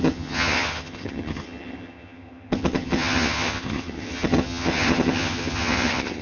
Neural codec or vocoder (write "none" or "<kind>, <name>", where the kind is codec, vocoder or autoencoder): vocoder, HiFi-GAN